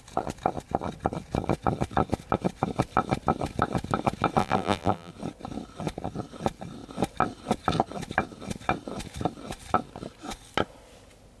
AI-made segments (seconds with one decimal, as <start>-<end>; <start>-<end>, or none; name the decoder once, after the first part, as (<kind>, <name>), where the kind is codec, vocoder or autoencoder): 4.4-5.1 (vocoder, BigVGAN v2)